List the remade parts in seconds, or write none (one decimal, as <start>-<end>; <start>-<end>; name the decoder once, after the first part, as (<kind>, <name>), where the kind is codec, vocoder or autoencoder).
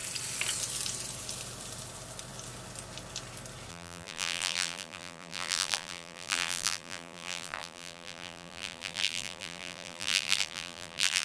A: 3.7-11.2 (vocoder, BigVGAN v2)